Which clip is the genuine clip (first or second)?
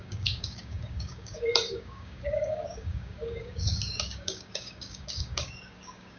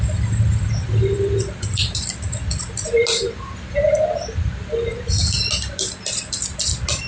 second